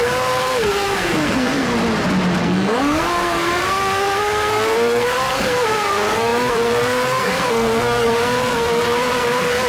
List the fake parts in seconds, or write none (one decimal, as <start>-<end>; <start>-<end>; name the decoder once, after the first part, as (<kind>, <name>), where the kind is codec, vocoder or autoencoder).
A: 0.0-1.7 (codec, SNAC); 2.4-9.7

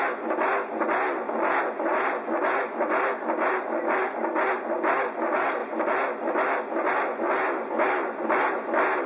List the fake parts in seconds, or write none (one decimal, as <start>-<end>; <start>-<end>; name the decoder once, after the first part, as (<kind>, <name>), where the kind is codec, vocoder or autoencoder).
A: none

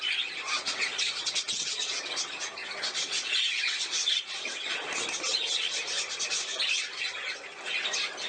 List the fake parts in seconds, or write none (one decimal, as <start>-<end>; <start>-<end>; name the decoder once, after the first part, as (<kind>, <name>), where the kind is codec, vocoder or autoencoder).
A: 2.6-4.2 (vocoder, Vocos)

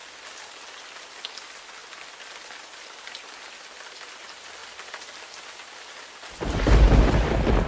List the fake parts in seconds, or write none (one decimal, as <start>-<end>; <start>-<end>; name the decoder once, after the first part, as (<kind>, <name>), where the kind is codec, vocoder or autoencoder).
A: none

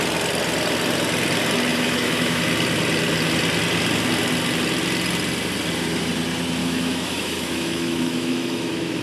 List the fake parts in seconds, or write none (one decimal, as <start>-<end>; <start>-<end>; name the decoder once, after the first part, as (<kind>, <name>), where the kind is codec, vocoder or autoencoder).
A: 1.7-2.4 (autoencoder, DAC-VAE); 6.6-9.0

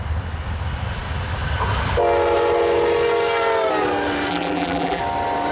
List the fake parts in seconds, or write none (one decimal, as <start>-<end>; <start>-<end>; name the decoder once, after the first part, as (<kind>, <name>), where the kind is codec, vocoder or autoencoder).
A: 4.3-5.0 (vocoder, BigVGAN v2)

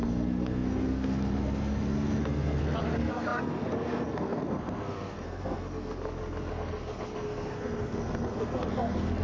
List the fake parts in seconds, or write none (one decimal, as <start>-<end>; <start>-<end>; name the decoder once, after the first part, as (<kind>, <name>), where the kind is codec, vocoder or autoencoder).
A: 0.0-6.0 (codec, SNAC); 6.5-9.2